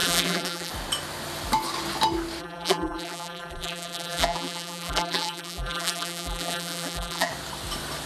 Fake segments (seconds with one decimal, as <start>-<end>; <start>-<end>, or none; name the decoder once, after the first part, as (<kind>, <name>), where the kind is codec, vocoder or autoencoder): 0.0-0.7 (vocoder, BigVGAN v2); 2.4-7.3